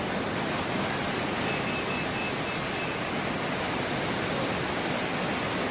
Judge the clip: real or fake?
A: real